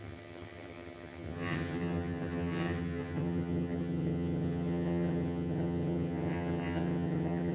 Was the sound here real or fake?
fake